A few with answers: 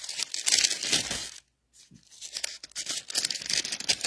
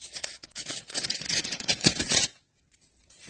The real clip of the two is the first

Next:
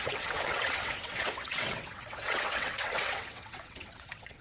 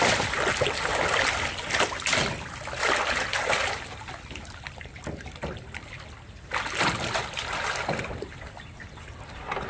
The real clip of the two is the second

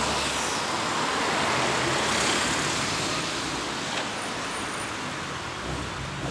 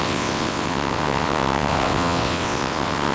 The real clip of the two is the first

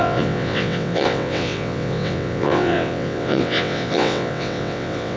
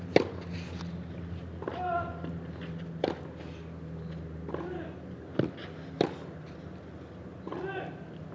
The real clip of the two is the second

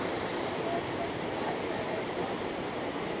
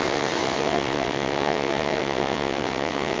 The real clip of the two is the first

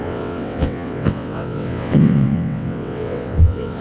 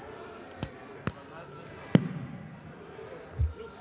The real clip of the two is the second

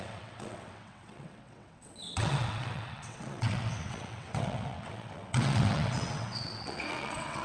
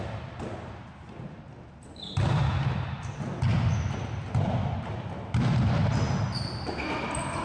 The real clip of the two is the second